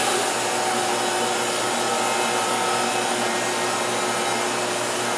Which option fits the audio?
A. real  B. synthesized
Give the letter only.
A